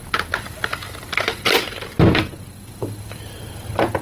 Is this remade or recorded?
recorded